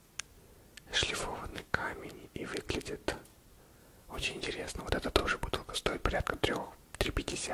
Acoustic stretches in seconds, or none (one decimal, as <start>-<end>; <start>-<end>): 0.0-1.5; 2.1-3.8; 4.4-7.5